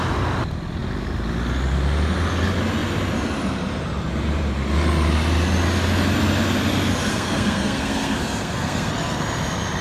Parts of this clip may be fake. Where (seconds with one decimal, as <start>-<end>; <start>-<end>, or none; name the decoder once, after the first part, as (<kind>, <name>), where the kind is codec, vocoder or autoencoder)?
7.1-8.9 (codec, SNAC)